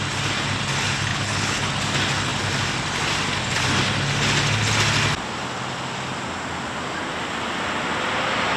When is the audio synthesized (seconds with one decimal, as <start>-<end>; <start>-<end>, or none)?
1.1-1.7